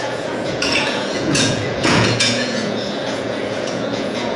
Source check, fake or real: fake